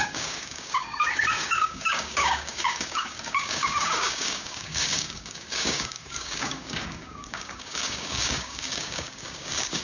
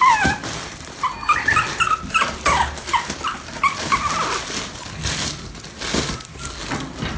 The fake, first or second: first